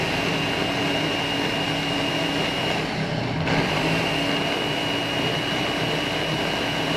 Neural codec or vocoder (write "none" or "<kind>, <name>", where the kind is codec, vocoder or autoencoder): none